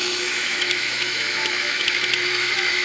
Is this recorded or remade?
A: remade